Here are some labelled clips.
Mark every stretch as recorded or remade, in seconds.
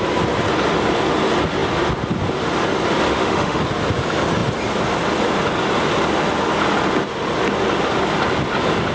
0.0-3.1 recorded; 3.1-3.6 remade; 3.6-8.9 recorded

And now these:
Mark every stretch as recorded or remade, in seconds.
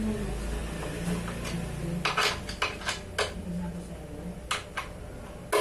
0.0-5.6 recorded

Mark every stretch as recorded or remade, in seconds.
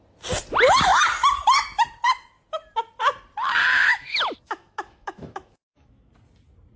0.0-3.9 recorded; 3.9-6.1 remade; 6.1-6.8 recorded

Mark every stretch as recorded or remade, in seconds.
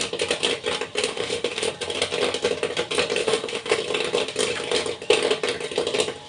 0.0-1.0 recorded; 1.0-1.7 remade; 1.7-3.2 recorded; 3.2-3.8 remade; 3.8-6.3 recorded